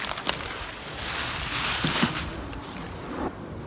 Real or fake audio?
real